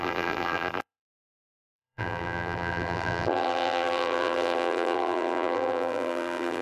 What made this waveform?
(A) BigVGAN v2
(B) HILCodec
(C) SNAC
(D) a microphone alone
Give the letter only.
A